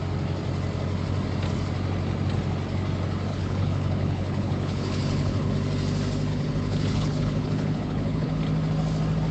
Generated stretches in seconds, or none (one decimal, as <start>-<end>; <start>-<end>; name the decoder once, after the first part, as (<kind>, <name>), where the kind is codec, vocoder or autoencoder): 3.3-5.5 (codec, HILCodec); 6.3-8.4